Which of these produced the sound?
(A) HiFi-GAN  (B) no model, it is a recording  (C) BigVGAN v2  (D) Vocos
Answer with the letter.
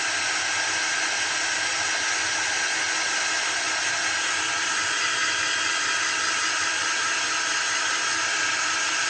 B